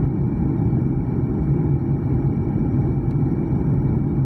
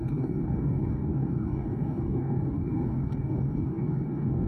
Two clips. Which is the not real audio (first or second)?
second